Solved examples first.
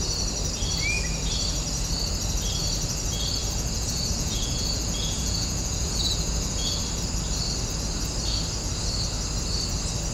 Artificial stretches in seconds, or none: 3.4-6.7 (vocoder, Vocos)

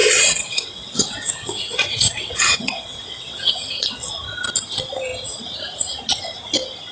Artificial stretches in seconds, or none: 0.0-4.1 (vocoder, WaveNeXt)